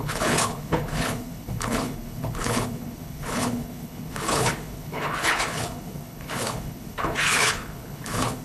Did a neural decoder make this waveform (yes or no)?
yes